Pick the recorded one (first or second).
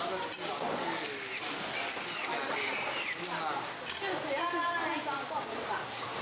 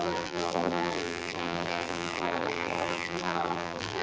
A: first